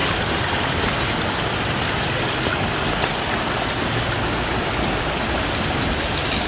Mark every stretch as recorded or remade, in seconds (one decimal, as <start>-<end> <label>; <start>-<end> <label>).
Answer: 0.0-6.5 recorded